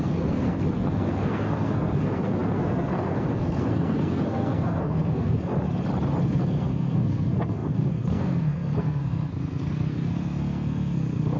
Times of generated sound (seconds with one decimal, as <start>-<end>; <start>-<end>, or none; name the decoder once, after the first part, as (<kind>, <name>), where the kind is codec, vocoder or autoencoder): 0.0-5.5 (codec, SNAC); 6.2-11.4